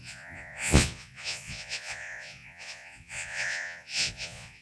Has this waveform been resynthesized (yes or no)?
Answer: yes